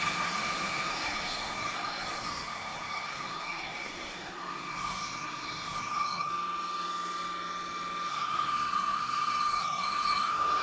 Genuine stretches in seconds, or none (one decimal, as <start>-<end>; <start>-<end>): 6.3-8.1

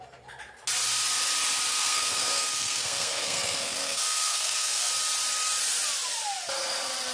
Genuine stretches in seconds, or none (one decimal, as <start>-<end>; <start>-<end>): 0.0-1.7; 4.9-7.1